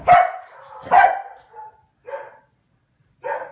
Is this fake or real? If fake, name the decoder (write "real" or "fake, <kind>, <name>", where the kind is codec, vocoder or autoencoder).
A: real